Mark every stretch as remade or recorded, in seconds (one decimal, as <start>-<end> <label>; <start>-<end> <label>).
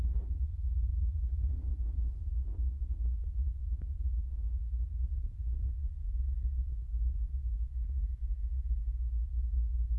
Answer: 0.0-10.0 recorded